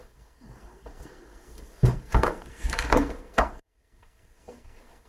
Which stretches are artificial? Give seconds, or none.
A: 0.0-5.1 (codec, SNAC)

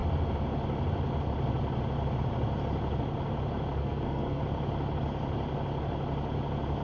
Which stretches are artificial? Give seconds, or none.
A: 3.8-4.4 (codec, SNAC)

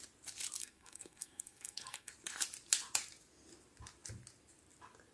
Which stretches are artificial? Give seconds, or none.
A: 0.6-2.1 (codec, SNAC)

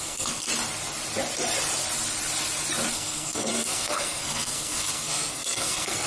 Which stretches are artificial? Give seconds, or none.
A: 0.0-0.5 (codec, SNAC); 2.9-6.1

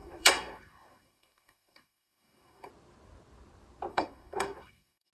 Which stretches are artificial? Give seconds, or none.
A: 0.0-2.7 (codec, SNAC); 3.9-5.1

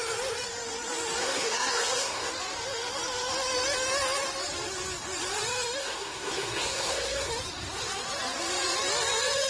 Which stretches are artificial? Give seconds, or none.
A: 1.2-2.3 (codec, SNAC); 5.8-7.3